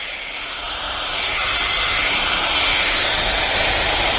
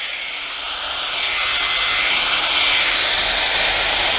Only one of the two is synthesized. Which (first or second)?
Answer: first